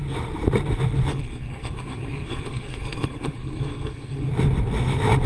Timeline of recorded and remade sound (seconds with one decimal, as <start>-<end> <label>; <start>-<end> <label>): 0.0-1.1 recorded; 1.1-4.3 remade; 4.3-5.3 recorded